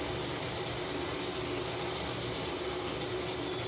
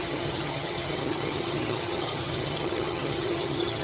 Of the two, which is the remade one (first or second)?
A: second